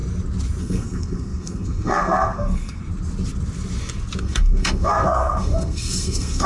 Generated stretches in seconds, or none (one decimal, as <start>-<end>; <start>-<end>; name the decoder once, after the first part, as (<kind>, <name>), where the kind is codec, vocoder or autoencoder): 0.6-2.8 (codec, SNAC); 4.2-6.5